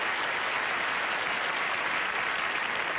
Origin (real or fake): real